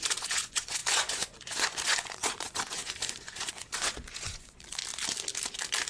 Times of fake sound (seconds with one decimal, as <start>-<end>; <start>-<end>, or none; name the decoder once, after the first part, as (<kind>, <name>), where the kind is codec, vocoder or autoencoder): 0.0-4.8 (vocoder, Vocos)